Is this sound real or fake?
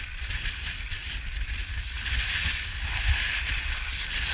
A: real